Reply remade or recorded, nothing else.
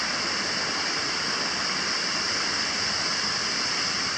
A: recorded